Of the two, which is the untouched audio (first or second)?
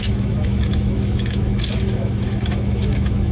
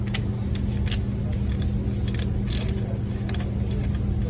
second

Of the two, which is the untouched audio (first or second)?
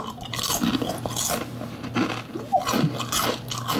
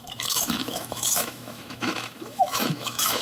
first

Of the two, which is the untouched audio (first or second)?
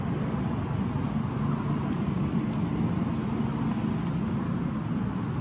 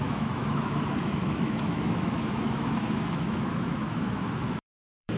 first